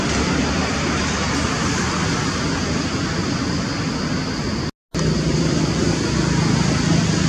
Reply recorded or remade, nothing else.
recorded